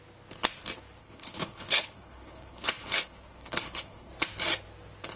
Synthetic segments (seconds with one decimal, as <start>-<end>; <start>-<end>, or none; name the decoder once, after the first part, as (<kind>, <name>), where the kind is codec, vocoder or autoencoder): 1.0-4.1 (codec, HILCodec)